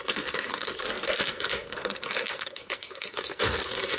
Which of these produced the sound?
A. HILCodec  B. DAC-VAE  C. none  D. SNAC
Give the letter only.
D